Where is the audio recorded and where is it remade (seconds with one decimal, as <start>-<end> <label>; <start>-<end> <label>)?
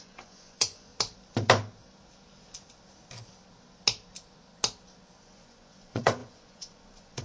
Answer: 0.0-0.9 remade; 0.9-5.2 recorded; 5.2-7.2 remade